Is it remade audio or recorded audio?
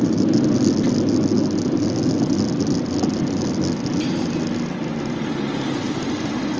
recorded